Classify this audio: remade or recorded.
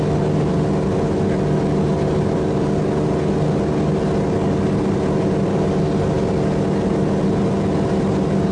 recorded